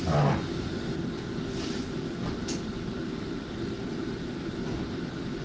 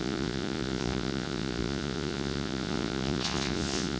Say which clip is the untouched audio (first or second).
first